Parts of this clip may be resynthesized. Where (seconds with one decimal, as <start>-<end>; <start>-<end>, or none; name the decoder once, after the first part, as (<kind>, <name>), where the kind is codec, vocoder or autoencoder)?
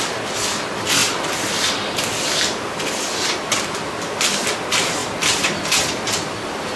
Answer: 1.0-4.6 (vocoder, BigVGAN v2); 5.0-6.8